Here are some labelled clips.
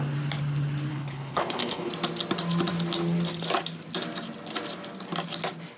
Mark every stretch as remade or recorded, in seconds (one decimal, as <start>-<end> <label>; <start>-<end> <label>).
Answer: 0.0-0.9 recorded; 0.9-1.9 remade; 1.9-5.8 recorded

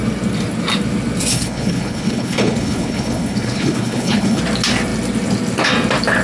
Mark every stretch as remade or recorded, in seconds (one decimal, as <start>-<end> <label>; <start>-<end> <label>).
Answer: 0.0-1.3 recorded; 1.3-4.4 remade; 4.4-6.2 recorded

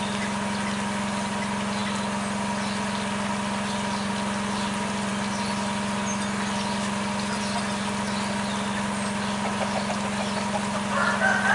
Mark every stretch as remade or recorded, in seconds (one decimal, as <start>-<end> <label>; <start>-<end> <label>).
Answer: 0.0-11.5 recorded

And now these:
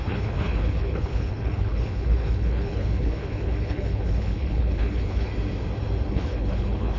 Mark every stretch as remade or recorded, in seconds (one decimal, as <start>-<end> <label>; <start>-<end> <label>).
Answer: 0.0-5.3 remade; 5.3-6.1 recorded; 6.1-7.0 remade

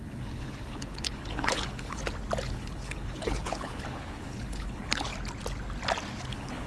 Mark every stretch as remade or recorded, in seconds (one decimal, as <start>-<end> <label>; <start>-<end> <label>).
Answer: 0.0-2.0 remade; 2.0-2.5 recorded; 2.5-5.1 remade; 5.1-6.3 recorded; 6.3-6.7 remade